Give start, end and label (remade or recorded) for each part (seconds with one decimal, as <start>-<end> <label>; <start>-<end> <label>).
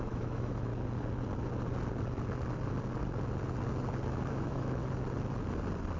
0.0-0.7 remade; 0.7-4.3 recorded; 4.3-4.8 remade; 4.8-6.0 recorded